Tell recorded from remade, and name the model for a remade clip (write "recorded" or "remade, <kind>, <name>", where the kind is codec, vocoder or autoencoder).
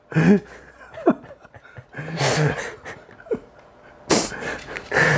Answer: recorded